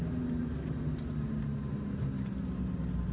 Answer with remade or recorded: recorded